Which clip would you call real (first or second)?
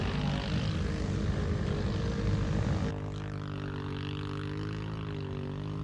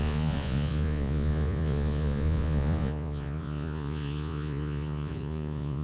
first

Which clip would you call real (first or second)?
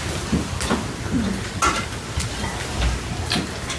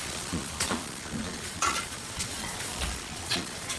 first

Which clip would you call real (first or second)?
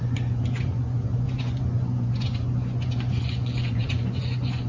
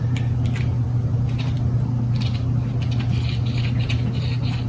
second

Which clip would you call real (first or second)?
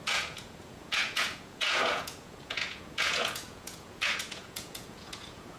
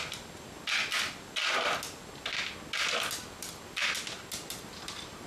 second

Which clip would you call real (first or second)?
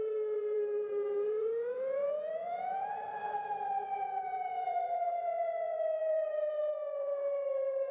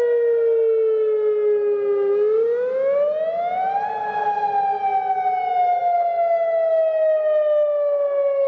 second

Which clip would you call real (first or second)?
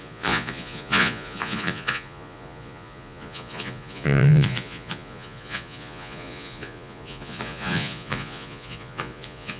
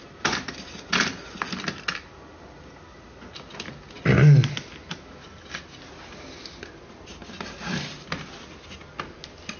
second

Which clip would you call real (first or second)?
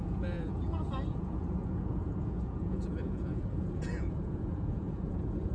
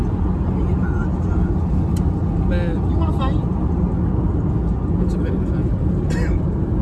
second